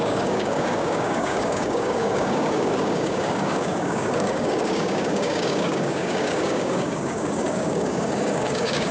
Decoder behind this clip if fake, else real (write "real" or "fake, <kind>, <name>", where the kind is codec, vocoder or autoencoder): fake, codec, DAC